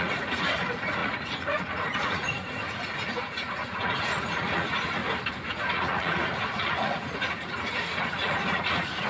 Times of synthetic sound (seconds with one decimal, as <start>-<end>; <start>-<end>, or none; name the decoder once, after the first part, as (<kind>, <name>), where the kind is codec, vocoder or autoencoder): 0.0-5.0 (vocoder, Vocos); 5.5-9.1